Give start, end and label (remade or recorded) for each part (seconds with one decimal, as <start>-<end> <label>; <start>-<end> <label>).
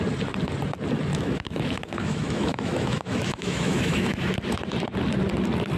0.0-1.1 recorded; 1.1-4.3 remade; 4.3-5.8 recorded